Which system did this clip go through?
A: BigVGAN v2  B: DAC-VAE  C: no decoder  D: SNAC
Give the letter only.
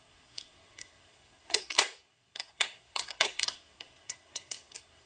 D